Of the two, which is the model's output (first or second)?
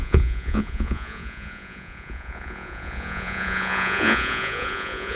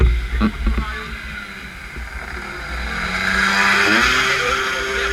first